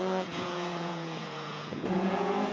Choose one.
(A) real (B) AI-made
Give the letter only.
B